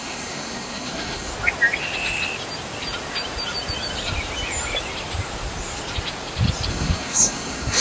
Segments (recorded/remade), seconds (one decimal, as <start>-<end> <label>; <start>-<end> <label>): 0.0-1.3 remade; 1.3-6.7 recorded; 6.7-7.8 remade